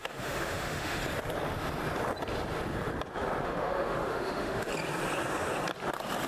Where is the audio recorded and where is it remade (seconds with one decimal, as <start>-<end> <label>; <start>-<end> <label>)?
0.0-1.0 remade; 1.0-3.4 recorded; 3.4-4.7 remade; 4.7-6.3 recorded